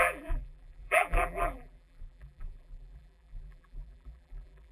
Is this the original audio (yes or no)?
no